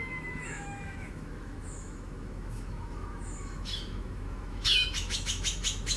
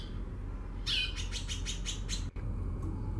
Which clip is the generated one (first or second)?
first